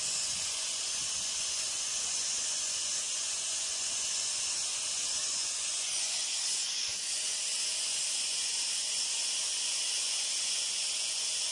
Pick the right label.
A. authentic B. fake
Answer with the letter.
B